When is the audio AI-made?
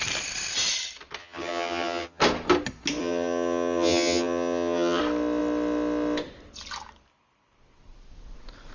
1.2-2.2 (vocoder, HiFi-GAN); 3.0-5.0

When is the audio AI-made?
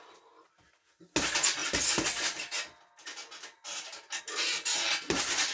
none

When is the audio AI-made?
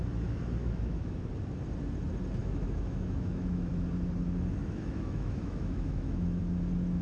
0.6-1.3 (autoencoder, DAC-VAE); 2.4-3.7; 4.6-6.4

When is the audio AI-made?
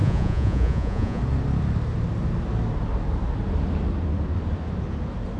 0.0-1.2 (vocoder, Vocos)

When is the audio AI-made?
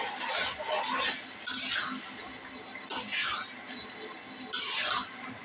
none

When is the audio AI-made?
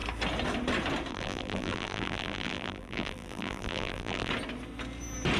1.1-4.3 (vocoder, BigVGAN v2)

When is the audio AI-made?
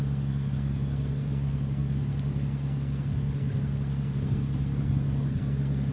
0.0-5.9 (codec, SNAC)